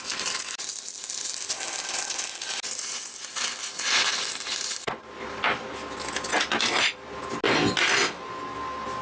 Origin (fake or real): real